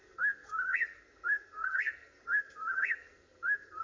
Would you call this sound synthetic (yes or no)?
yes